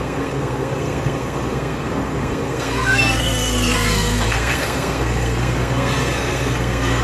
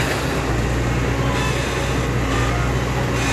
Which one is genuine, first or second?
second